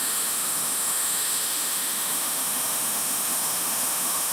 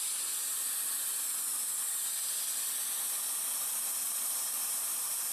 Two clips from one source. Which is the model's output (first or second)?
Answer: first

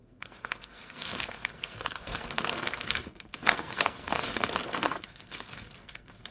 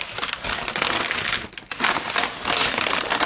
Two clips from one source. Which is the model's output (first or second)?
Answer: first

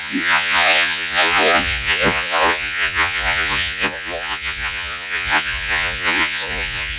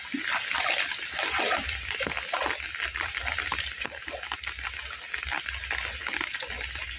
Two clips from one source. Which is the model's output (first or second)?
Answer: first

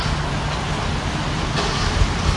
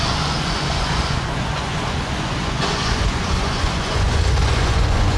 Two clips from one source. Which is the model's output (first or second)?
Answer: second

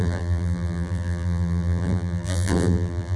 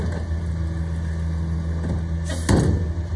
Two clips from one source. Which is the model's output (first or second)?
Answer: first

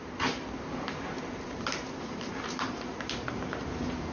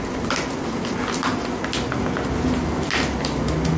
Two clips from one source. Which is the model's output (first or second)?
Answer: first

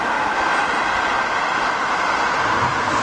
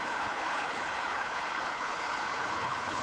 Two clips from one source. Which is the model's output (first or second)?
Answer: second